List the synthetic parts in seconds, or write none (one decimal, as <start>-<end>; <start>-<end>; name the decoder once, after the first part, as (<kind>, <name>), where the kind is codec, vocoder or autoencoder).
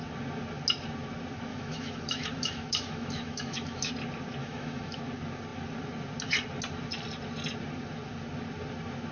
1.5-3.9 (autoencoder, DAC-VAE); 4.4-5.0